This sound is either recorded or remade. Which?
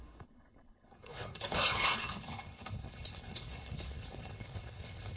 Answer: remade